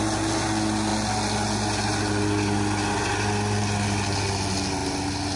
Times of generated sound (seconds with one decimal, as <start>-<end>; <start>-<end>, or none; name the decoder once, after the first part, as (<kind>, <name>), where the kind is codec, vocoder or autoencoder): none